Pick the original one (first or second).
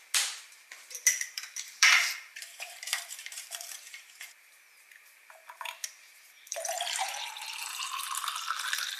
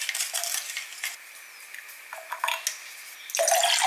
second